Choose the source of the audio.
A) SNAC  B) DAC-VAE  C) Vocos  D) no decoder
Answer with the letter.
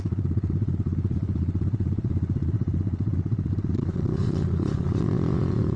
C